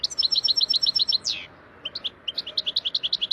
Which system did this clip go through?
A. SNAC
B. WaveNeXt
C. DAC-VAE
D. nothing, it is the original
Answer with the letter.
D